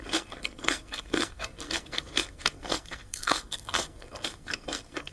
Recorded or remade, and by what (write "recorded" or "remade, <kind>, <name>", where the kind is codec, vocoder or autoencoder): remade, codec, SNAC